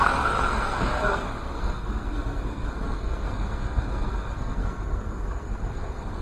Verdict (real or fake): fake